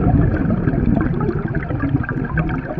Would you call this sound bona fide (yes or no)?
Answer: yes